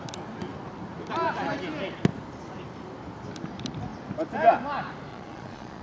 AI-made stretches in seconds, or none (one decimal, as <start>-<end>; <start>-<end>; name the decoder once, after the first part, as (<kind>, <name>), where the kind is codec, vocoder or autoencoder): 5.1-5.8 (vocoder, Vocos)